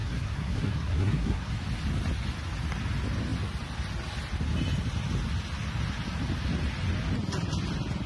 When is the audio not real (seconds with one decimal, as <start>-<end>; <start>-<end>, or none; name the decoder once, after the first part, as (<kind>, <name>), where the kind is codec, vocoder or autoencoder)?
0.0-1.5 (codec, SNAC)